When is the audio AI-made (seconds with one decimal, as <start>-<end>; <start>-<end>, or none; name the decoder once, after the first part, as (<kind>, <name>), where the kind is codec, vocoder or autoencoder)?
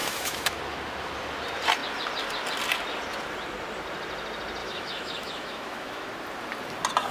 0.0-0.6 (autoencoder, DAC-VAE); 4.6-6.1